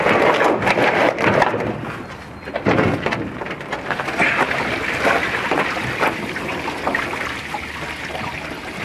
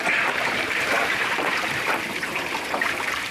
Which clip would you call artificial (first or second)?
second